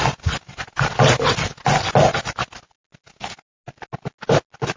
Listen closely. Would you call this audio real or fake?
real